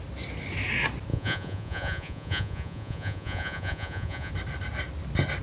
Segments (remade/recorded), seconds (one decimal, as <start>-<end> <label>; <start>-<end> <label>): 0.0-1.1 recorded; 1.1-4.3 remade; 4.3-5.4 recorded